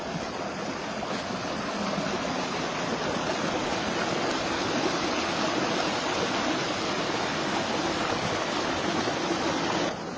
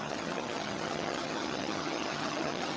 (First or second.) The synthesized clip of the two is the second